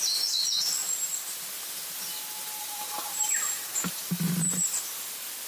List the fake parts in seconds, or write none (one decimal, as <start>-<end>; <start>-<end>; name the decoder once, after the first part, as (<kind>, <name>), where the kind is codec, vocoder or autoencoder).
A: 0.8-1.5 (vocoder, BigVGAN v2); 2.6-4.3